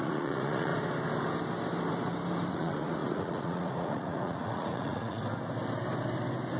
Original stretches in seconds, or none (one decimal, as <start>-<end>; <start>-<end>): 0.7-2.5; 5.2-6.6